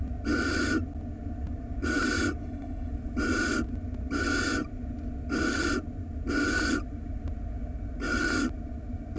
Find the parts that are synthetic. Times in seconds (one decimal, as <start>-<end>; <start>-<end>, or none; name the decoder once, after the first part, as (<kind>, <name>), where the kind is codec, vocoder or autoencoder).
2.4-2.9 (codec, HILCodec)